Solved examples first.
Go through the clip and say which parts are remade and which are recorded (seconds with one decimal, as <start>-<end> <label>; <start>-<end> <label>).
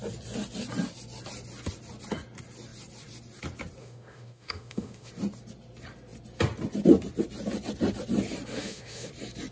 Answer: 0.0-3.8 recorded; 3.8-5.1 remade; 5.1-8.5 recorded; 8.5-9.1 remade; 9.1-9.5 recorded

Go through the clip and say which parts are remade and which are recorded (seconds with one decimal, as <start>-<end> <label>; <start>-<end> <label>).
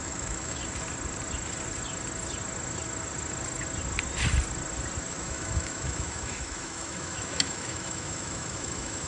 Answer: 0.0-0.6 remade; 0.6-5.1 recorded; 5.1-9.1 remade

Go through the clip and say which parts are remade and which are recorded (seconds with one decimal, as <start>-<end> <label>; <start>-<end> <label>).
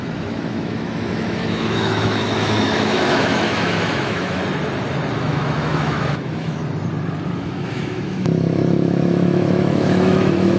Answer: 0.0-4.4 remade; 4.4-5.1 recorded; 5.1-6.6 remade; 6.6-7.3 recorded; 7.3-10.6 remade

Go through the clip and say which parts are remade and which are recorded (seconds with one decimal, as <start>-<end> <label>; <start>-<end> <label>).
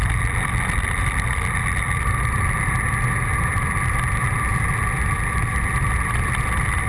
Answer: 0.0-6.9 recorded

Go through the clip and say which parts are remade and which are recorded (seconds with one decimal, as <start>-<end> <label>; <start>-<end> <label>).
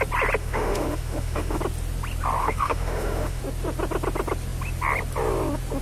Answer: 0.0-0.4 recorded; 0.4-1.6 remade; 1.6-2.4 recorded; 2.4-3.4 remade; 3.4-5.8 recorded